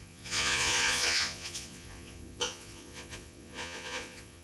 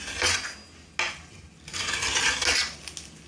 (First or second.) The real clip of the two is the second